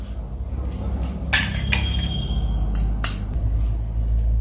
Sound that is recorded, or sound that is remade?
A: recorded